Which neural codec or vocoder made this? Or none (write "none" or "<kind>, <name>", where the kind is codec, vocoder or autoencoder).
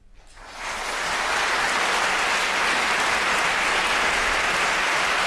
none